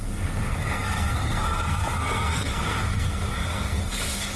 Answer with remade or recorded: remade